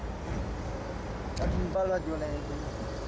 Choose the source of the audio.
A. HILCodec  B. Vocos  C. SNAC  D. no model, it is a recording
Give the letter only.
D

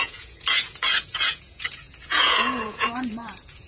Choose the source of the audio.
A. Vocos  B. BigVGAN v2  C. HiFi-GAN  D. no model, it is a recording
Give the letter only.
A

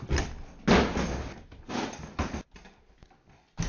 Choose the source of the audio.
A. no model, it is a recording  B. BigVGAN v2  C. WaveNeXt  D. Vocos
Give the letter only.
A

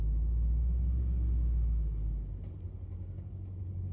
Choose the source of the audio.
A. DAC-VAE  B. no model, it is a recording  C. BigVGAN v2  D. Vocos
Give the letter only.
B